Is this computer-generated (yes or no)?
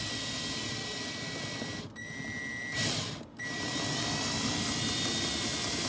no